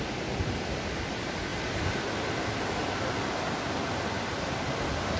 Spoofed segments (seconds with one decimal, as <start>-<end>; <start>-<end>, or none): none